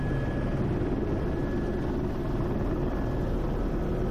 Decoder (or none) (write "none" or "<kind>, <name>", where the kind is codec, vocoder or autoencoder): none